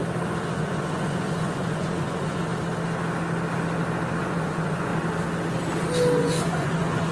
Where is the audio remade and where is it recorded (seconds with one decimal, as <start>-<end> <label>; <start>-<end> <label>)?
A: 0.0-0.5 recorded; 0.5-2.5 remade; 2.5-4.2 recorded; 4.2-4.9 remade; 4.9-6.2 recorded; 6.2-7.1 remade